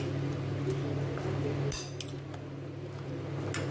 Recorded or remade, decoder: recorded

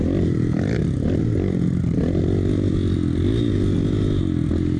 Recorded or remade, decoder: recorded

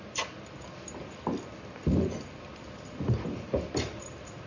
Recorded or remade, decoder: recorded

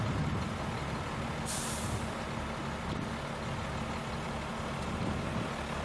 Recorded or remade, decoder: recorded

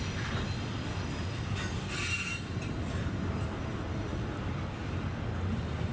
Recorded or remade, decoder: recorded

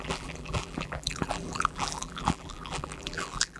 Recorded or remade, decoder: remade, vocoder, BigVGAN v2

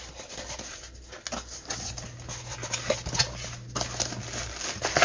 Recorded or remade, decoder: recorded